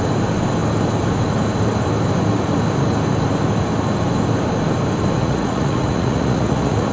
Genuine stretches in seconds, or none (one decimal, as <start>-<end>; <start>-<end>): 0.0-5.2